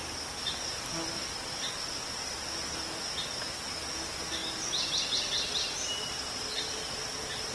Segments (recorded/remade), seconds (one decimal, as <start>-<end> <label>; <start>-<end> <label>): 0.0-7.5 recorded